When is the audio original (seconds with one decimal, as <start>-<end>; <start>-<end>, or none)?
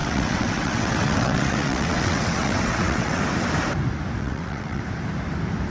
3.2-4.2; 4.8-5.7